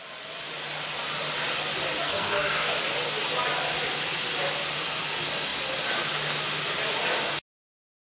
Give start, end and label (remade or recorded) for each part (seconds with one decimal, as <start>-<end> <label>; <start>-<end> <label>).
0.0-2.0 recorded; 2.0-2.8 remade; 2.8-8.1 recorded